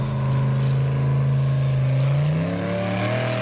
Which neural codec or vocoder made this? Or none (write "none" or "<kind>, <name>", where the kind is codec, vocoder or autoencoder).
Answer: none